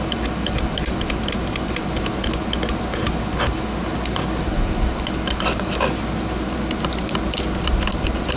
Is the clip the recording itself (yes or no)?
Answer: yes